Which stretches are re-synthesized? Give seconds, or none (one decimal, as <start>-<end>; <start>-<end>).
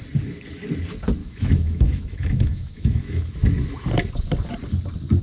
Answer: 1.2-3.3